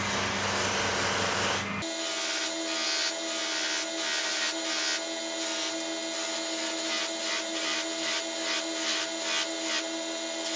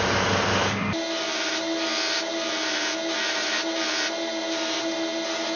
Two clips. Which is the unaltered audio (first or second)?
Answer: first